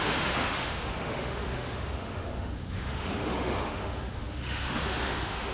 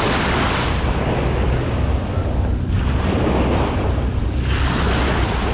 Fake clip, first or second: first